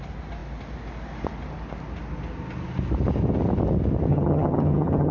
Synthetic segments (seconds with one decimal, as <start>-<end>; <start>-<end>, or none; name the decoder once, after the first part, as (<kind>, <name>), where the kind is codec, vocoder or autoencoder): 4.1-5.1 (vocoder, HiFi-GAN)